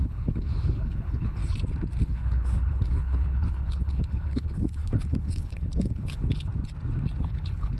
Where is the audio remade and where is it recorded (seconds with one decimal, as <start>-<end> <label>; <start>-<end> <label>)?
0.0-1.4 remade; 1.4-2.0 recorded; 2.0-6.5 remade; 6.5-7.2 recorded; 7.2-7.8 remade